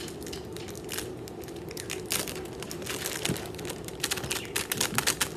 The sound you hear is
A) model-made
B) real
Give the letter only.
B